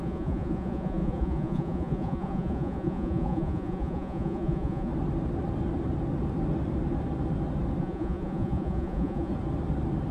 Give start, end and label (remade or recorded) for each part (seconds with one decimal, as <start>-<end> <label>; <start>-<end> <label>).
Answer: 0.0-4.9 remade; 4.9-7.8 recorded; 7.8-9.3 remade; 9.3-10.1 recorded